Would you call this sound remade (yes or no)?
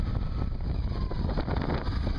no